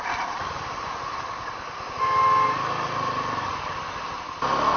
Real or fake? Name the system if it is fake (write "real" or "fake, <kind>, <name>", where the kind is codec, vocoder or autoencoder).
real